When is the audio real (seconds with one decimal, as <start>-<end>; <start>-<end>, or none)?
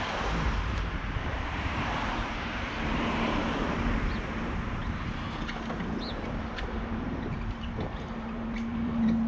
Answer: 4.8-6.4